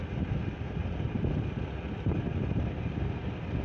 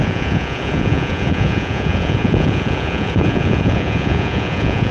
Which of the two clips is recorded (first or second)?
first